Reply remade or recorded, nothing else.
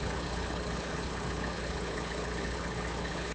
remade